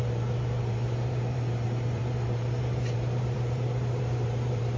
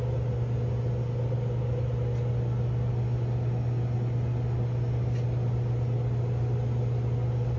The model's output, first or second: first